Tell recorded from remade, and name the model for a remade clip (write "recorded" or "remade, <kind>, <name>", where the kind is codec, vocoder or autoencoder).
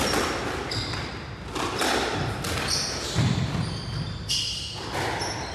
recorded